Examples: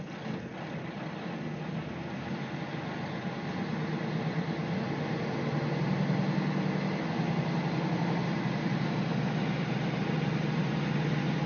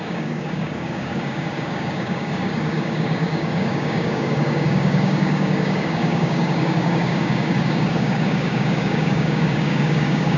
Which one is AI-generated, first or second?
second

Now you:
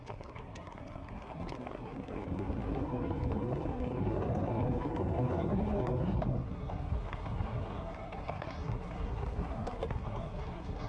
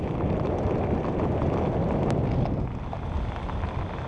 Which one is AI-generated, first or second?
first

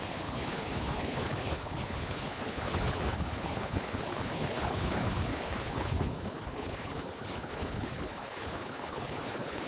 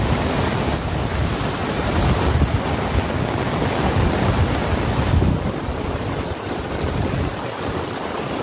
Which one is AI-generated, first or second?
first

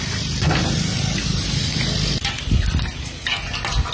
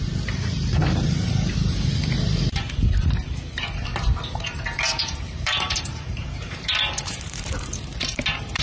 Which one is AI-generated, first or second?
second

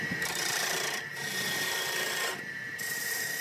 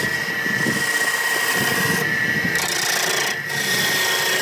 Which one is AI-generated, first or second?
first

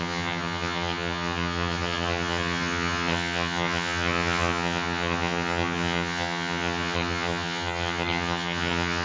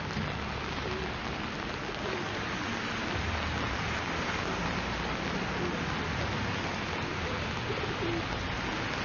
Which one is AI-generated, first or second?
first